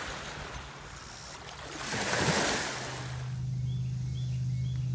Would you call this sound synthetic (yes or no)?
no